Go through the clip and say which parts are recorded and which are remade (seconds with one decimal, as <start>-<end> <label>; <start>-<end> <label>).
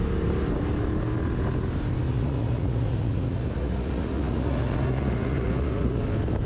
0.0-2.1 recorded; 2.1-6.0 remade; 6.0-6.5 recorded